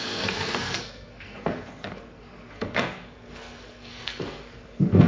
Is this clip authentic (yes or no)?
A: no